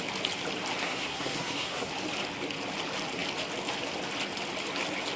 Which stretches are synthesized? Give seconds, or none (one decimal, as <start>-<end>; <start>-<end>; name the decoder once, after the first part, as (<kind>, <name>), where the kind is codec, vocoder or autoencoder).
0.8-1.9 (codec, SNAC)